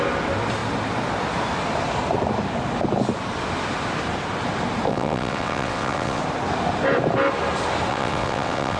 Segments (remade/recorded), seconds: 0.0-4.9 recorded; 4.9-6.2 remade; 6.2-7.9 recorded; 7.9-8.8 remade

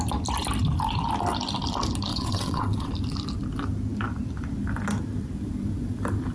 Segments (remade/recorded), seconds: 0.0-2.1 recorded; 2.1-2.9 remade; 2.9-6.3 recorded

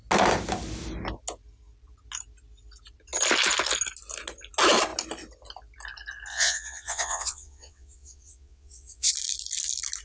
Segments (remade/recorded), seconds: 0.0-6.3 recorded; 6.3-9.1 remade; 9.1-10.0 recorded

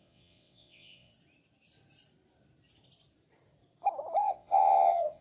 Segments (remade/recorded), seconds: 0.0-1.1 remade; 1.1-4.2 recorded; 4.2-5.2 remade

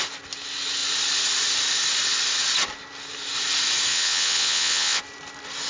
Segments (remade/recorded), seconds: 0.0-3.9 recorded; 3.9-5.0 remade; 5.0-5.7 recorded

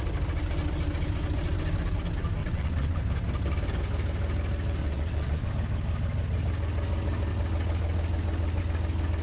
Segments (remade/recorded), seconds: 0.0-2.4 recorded; 2.4-3.0 remade; 3.0-4.8 recorded; 4.8-5.5 remade; 5.5-9.2 recorded